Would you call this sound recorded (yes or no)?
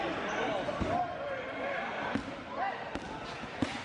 yes